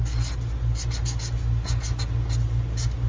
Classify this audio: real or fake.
real